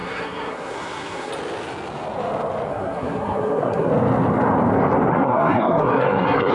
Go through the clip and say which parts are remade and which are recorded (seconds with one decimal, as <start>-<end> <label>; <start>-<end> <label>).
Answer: 0.0-1.3 remade; 1.3-2.7 recorded; 2.7-3.9 remade; 3.9-5.1 recorded; 5.1-6.5 remade